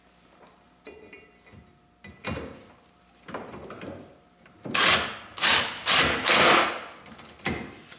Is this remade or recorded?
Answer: recorded